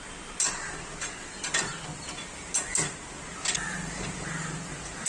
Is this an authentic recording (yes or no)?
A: yes